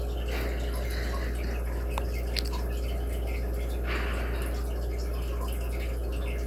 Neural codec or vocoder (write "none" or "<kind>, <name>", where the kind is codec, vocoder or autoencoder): none